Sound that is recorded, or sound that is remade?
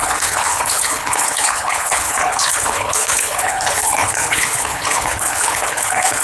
remade